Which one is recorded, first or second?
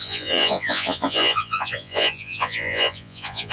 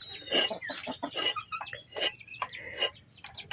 second